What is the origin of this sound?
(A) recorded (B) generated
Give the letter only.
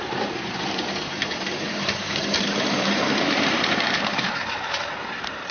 B